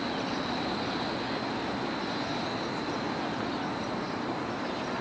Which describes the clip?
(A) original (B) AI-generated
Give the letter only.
A